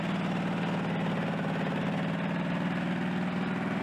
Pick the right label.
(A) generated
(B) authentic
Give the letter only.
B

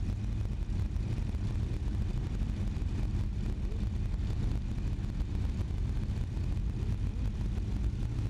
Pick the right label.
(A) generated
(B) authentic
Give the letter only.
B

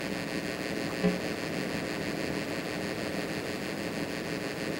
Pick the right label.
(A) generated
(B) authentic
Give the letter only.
B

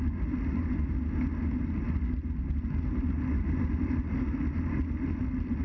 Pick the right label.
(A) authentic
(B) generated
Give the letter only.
A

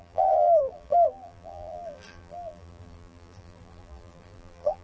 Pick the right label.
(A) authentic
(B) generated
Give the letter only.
B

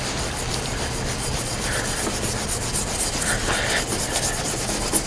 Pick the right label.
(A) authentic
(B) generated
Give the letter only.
A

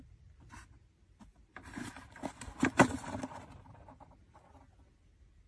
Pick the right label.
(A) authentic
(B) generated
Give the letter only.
A